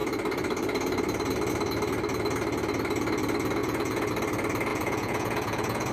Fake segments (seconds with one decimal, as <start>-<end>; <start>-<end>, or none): 3.6-4.1; 4.7-5.9